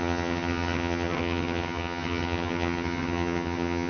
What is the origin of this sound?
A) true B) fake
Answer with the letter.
B